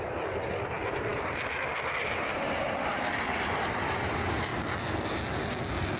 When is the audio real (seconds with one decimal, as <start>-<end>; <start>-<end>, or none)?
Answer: 4.5-5.4